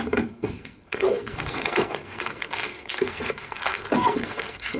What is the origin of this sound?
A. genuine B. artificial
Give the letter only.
B